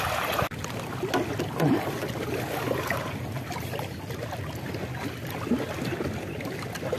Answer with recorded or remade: recorded